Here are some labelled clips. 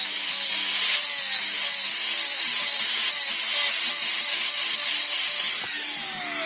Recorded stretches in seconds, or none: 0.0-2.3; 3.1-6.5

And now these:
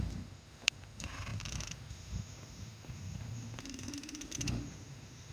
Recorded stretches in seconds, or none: none

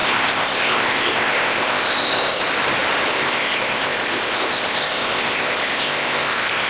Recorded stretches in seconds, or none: 2.4-3.1

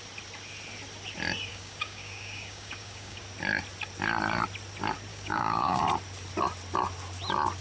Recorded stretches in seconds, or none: 0.0-1.5; 3.2-5.1; 5.8-7.6